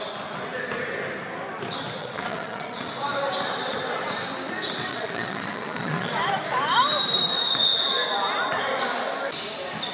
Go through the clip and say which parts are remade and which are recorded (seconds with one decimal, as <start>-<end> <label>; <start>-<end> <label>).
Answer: 0.0-2.0 recorded; 2.0-2.9 remade; 2.9-4.9 recorded; 4.9-6.1 remade; 6.1-9.9 recorded